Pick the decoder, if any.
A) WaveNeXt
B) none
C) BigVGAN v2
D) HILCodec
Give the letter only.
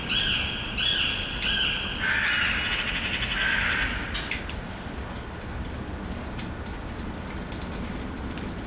B